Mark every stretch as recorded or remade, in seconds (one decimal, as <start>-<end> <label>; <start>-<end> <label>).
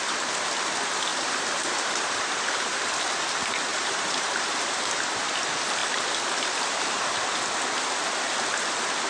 0.0-1.1 recorded; 1.1-2.8 remade; 2.8-3.7 recorded; 3.7-5.0 remade; 5.0-9.1 recorded